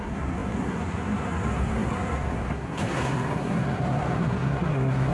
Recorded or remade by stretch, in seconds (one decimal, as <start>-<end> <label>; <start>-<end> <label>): 0.0-5.1 remade